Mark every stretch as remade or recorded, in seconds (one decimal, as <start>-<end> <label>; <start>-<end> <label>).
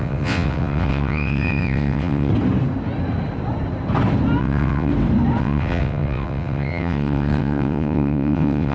0.0-2.3 remade; 2.3-4.4 recorded; 4.4-4.9 remade; 4.9-5.4 recorded; 5.4-8.7 remade